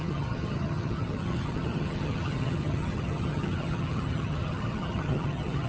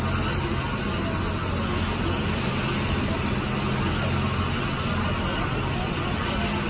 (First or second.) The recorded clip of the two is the second